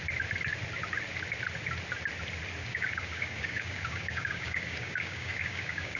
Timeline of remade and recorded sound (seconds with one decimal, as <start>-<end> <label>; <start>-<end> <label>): 0.0-2.6 recorded; 2.6-6.0 remade